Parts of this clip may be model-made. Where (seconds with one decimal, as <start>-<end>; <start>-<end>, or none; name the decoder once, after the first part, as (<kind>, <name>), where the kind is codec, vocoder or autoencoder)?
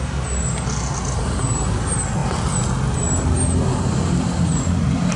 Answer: none